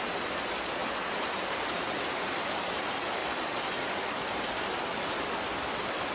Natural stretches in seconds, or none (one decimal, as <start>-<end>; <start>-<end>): 0.0-0.8; 2.5-3.2; 5.2-6.1